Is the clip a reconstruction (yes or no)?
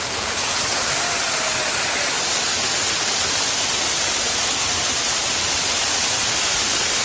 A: no